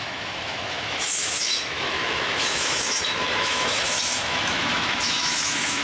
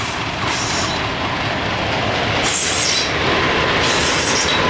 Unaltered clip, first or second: second